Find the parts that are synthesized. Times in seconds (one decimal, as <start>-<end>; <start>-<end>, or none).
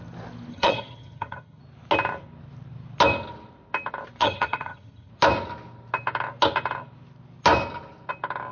0.5-1.6; 4.2-5.1